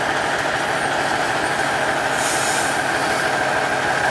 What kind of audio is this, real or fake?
real